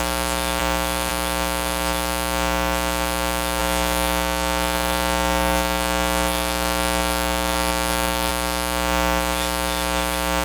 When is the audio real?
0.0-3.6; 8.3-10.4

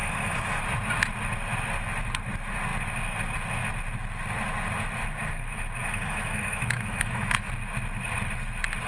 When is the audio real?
0.6-5.8; 7.5-8.9

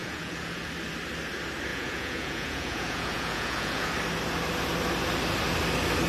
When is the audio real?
0.7-1.7; 3.9-6.1